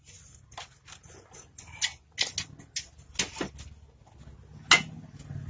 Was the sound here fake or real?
real